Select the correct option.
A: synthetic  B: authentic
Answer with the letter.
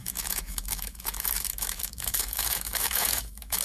A